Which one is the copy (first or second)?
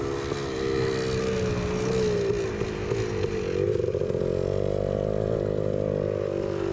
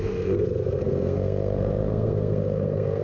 second